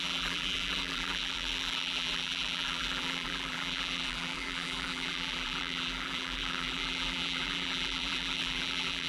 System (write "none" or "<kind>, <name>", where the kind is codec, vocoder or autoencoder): vocoder, BigVGAN v2